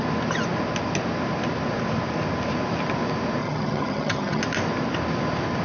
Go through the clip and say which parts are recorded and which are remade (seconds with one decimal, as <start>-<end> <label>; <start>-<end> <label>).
0.0-3.4 recorded; 3.4-4.4 remade; 4.4-5.6 recorded